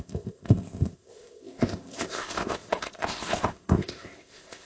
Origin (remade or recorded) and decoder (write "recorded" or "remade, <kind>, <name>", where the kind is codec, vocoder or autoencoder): remade, codec, ZipCodec